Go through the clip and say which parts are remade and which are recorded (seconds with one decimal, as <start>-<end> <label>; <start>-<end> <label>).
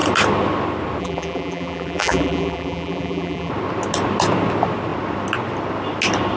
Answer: 0.0-1.0 recorded; 1.0-3.5 remade; 3.5-6.4 recorded